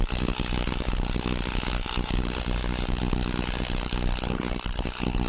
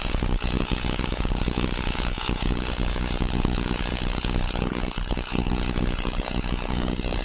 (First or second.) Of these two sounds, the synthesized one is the second